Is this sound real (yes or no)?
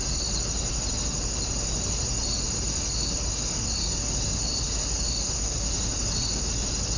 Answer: yes